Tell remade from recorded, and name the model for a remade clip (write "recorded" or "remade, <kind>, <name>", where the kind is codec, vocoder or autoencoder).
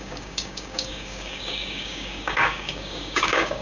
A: remade, codec, DAC